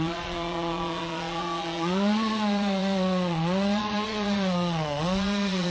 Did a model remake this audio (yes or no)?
yes